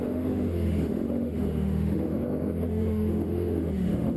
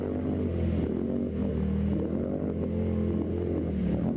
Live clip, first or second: second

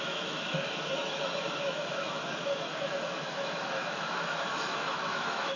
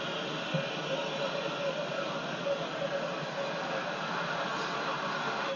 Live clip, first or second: second